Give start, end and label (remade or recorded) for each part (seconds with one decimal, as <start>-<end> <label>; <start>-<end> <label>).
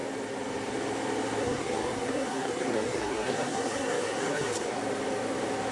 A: 0.0-1.4 recorded; 1.4-4.8 remade; 4.8-5.7 recorded